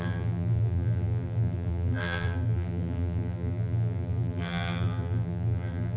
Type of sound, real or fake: fake